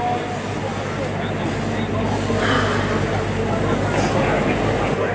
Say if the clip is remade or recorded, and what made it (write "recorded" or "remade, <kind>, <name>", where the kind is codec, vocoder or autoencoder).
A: recorded